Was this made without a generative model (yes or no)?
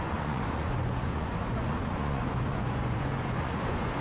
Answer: no